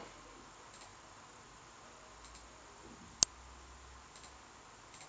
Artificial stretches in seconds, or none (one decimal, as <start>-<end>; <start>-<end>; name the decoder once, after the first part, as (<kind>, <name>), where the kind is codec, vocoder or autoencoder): none